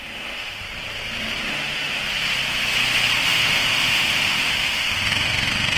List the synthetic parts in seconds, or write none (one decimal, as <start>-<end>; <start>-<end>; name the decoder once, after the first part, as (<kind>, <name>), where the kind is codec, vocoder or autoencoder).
0.0-0.6 (autoencoder, DAC-VAE); 1.4-2.0; 3.2-5.8